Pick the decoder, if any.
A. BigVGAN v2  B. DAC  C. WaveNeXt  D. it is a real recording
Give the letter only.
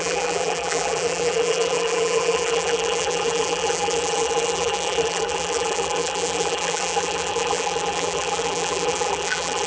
A